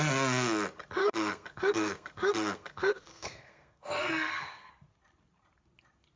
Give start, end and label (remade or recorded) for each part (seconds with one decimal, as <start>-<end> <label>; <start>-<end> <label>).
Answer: 0.0-1.0 recorded; 1.0-4.7 remade; 4.7-6.2 recorded